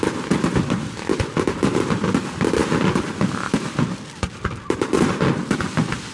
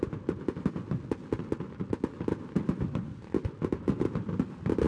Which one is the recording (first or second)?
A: second